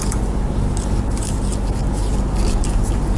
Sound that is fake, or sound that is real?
real